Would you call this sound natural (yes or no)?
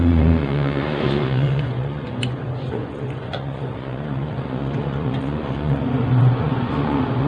no